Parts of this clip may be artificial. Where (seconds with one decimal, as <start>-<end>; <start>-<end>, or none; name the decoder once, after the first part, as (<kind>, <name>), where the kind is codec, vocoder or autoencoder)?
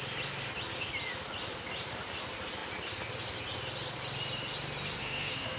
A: 5.0-5.6 (codec, SNAC)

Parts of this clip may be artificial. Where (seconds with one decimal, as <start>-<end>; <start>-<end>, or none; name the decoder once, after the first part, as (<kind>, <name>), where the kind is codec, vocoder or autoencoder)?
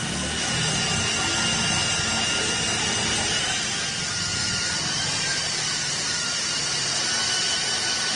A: 4.3-6.5 (vocoder, BigVGAN v2)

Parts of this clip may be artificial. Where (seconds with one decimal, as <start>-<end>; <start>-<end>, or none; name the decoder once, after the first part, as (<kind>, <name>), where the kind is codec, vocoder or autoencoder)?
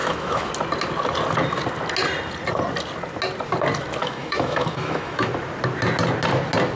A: 0.0-0.5 (autoencoder, DAC-VAE); 4.0-5.3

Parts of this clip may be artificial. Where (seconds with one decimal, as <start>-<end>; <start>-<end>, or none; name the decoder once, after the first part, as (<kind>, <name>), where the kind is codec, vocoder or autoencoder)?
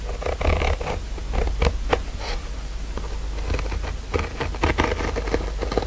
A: none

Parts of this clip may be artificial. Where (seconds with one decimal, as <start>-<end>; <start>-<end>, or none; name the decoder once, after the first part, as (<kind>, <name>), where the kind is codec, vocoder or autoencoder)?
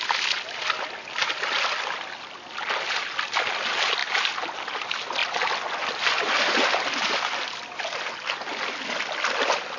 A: none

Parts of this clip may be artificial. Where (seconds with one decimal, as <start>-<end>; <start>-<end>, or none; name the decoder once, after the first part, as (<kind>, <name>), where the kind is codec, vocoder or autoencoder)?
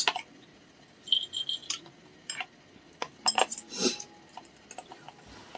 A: none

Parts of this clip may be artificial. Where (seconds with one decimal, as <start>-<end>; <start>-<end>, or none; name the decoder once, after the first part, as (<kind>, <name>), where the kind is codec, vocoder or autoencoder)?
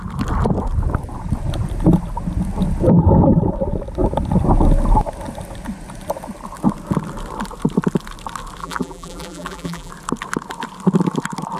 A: 8.6-9.9 (vocoder, BigVGAN v2)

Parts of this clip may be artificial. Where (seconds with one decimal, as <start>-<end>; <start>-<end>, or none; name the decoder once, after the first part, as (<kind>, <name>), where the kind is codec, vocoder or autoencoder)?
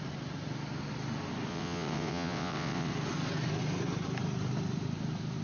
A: 1.5-2.9 (vocoder, WaveNeXt)